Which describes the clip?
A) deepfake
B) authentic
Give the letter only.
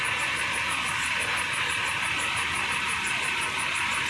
B